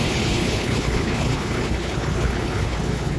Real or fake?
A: fake